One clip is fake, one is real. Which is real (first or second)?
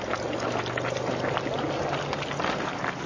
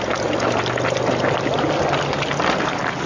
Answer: first